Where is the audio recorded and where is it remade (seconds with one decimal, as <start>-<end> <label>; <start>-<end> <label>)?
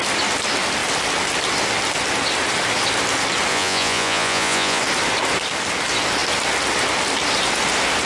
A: 0.0-3.5 recorded; 3.5-4.8 remade; 4.8-8.1 recorded